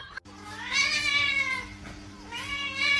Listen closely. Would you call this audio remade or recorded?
recorded